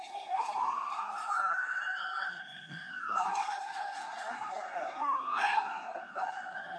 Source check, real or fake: fake